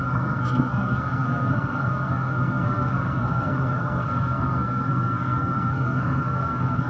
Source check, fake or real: fake